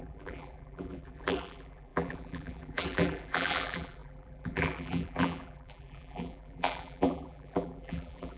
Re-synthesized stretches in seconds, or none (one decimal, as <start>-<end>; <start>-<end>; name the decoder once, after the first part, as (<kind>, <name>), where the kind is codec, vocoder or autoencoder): 0.0-8.4 (vocoder, BigVGAN v2)